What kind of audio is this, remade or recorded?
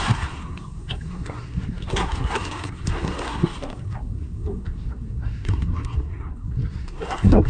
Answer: remade